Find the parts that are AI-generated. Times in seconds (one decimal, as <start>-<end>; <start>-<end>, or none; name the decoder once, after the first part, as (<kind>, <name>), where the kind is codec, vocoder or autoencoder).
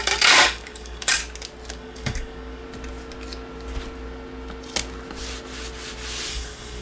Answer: 0.0-1.2 (codec, DAC); 1.7-2.6; 6.3-6.8